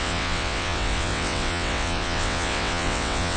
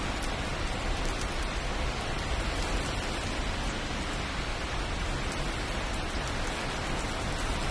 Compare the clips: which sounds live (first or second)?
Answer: second